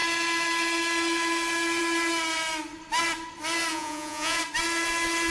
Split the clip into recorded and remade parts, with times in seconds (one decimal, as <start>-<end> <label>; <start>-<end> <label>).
0.0-3.7 recorded; 3.7-4.4 remade; 4.4-5.3 recorded